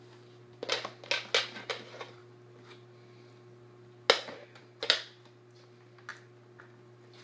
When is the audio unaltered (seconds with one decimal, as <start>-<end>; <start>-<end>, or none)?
0.0-7.2